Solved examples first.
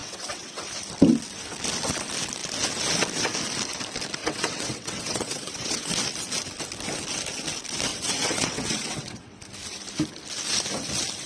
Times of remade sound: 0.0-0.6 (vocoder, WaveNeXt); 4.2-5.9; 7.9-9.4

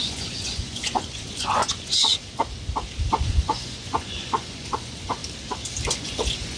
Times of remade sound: 0.0-2.1 (vocoder, Vocos); 3.1-5.2; 6.0-6.6

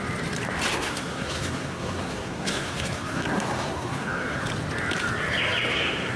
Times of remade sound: 0.7-4.4 (codec, SNAC); 5.7-6.2

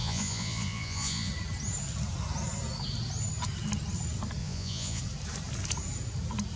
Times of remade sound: 0.0-1.3 (vocoder, Vocos); 4.4-5.0

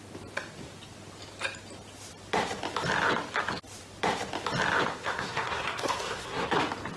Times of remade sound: 4.9-6.6 (codec, SNAC)

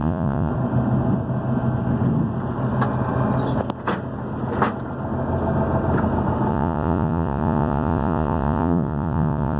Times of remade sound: 0.0-0.5 (vocoder, Vocos); 6.5-9.6

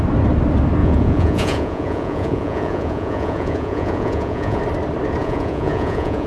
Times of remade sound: 0.8-4.6 (vocoder, Vocos); 5.2-6.3

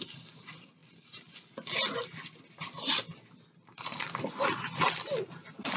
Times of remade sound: none